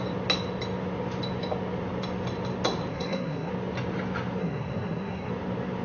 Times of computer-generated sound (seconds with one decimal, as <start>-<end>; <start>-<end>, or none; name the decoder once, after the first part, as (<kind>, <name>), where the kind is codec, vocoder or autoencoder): 2.9-3.5 (codec, SNAC); 4.4-5.3